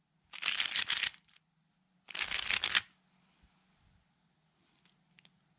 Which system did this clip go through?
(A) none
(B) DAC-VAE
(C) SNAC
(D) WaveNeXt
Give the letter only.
A